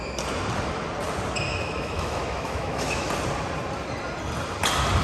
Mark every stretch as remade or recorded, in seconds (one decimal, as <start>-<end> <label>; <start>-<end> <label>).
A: 0.0-1.5 recorded; 1.5-3.1 remade; 3.1-5.0 recorded